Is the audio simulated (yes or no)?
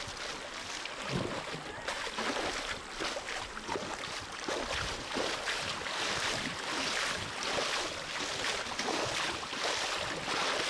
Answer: no